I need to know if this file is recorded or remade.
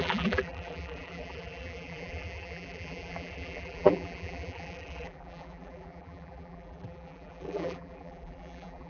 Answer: remade